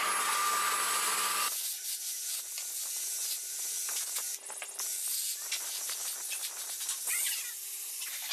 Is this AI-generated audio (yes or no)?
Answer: no